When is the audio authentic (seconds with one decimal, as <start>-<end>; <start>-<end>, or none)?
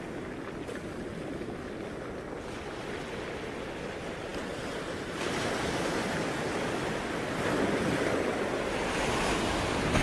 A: 0.0-10.0